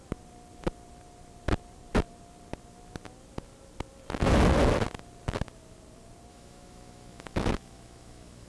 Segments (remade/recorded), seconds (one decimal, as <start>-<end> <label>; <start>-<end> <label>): 0.0-6.3 recorded; 6.3-8.5 remade